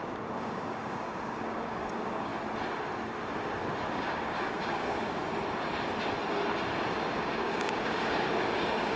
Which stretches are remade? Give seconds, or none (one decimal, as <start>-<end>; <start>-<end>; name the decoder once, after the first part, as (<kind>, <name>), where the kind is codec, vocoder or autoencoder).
0.0-2.3 (codec, DAC); 3.9-5.2; 6.9-9.0